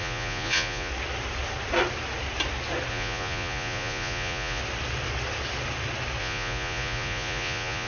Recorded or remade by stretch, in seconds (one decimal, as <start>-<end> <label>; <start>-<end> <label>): 0.0-0.9 remade; 0.9-2.9 recorded; 2.9-4.6 remade; 4.6-6.2 recorded; 6.2-7.9 remade